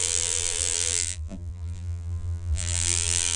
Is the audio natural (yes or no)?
no